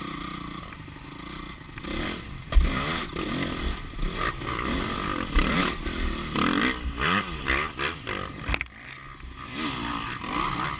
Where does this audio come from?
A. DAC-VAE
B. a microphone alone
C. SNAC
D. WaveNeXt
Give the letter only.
B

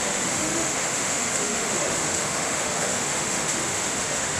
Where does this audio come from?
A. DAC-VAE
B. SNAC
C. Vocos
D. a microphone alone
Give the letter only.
A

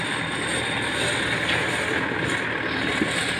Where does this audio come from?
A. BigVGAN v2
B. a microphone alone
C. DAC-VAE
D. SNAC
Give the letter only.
B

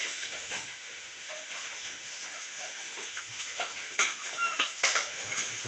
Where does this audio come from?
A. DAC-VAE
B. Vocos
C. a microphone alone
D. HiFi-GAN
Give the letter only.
A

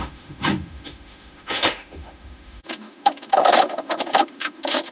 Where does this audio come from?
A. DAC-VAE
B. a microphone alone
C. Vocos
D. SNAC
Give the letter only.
A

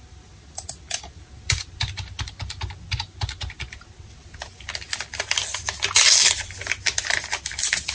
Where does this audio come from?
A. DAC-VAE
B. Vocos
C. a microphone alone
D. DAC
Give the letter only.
C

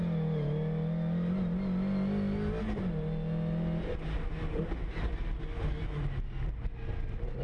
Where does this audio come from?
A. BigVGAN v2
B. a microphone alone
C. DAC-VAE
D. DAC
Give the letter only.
B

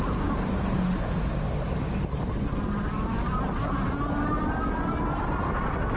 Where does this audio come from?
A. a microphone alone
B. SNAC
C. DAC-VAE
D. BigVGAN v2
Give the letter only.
A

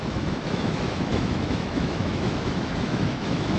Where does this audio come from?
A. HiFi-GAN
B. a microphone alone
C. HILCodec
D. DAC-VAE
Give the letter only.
D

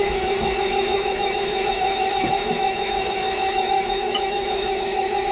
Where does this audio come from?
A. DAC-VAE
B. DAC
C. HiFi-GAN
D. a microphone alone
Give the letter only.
A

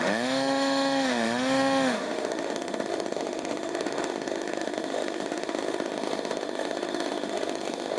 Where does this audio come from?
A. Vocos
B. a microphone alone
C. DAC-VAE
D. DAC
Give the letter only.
C